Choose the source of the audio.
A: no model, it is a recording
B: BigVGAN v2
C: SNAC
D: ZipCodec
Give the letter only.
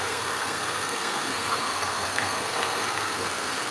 C